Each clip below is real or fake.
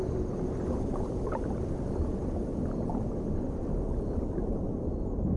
real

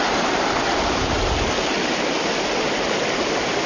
real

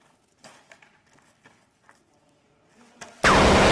real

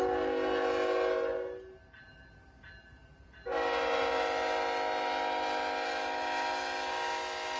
real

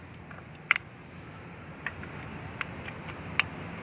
real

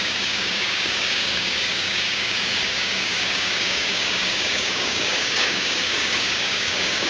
fake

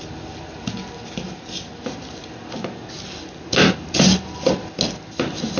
real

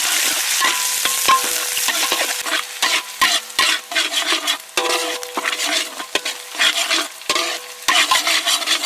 real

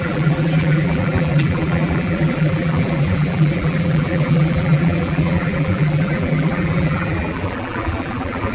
fake